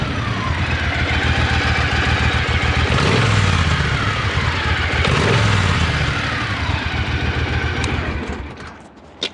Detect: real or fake real